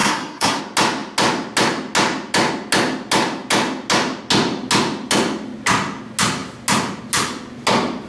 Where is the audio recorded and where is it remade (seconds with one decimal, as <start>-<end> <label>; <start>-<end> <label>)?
0.0-0.6 remade; 0.6-8.1 recorded